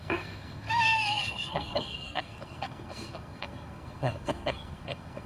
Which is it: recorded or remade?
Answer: remade